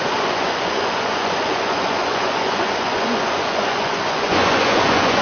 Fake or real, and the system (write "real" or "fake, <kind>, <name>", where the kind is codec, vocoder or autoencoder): fake, vocoder, Vocos